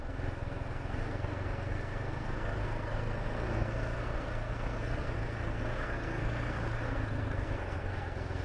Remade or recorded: remade